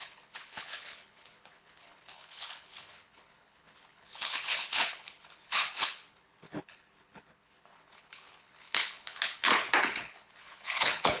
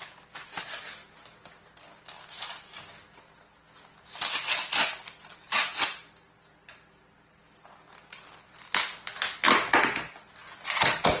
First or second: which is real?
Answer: second